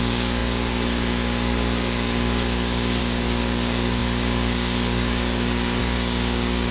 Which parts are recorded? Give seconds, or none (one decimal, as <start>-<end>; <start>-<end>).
none